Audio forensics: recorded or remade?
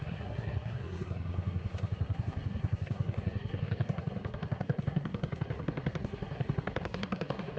remade